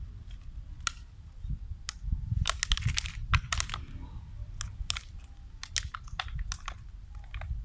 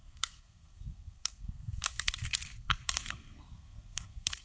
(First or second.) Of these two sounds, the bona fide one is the first